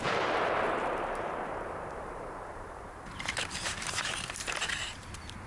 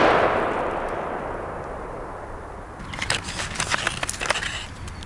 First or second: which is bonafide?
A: second